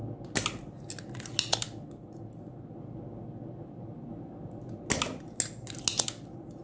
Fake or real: real